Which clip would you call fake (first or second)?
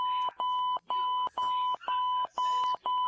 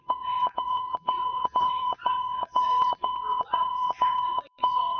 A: second